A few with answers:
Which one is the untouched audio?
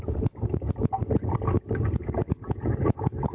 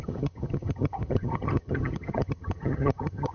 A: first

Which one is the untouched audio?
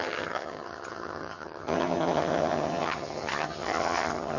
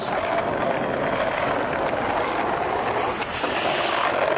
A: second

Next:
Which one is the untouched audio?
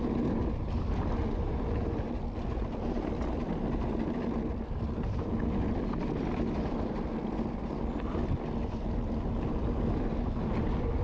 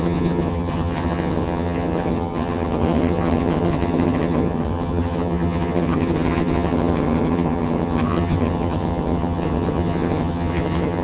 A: first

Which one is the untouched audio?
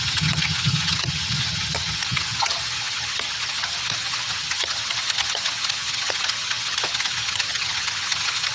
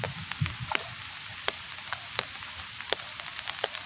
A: second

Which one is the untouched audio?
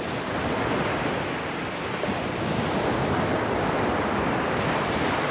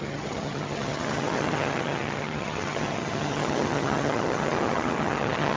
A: first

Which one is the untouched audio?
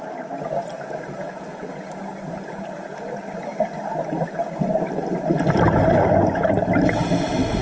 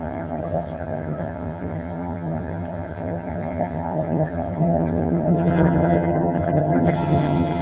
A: first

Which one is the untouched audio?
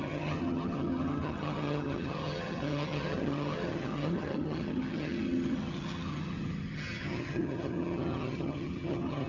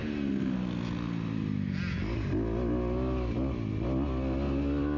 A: second